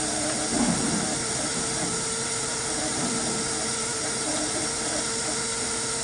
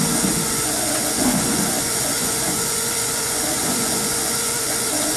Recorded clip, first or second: first